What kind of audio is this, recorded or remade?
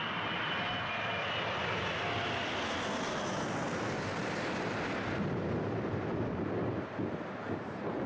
recorded